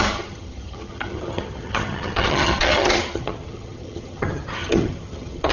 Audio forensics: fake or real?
fake